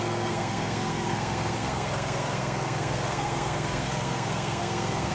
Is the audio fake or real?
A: fake